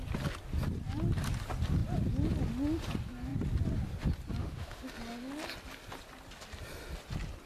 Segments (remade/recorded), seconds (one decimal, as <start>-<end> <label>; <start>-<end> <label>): 0.0-4.4 recorded; 4.4-4.9 remade; 4.9-7.5 recorded